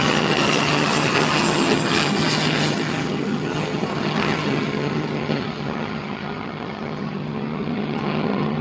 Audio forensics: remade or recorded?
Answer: remade